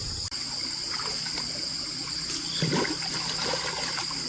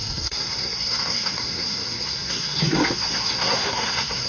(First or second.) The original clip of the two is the first